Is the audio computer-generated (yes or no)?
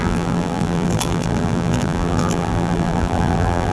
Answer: yes